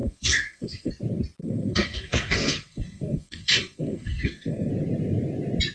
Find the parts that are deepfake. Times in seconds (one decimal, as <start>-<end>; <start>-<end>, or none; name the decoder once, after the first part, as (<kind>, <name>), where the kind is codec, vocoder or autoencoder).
0.0-0.9 (codec, SNAC); 1.4-4.7